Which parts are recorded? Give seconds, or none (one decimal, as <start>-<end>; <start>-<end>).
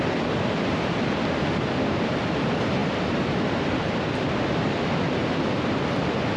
0.0-2.8; 5.8-6.4